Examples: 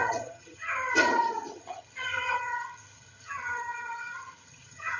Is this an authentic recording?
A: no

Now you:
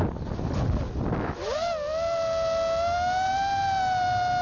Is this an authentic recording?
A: yes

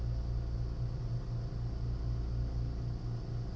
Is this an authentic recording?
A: yes